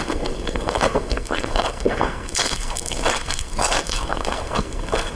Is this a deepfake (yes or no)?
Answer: yes